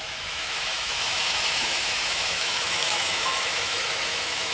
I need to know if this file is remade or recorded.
remade